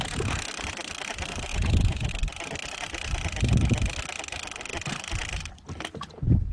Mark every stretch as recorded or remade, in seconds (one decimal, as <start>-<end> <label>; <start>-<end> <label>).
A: 0.0-1.5 recorded; 1.5-2.1 remade; 2.1-6.5 recorded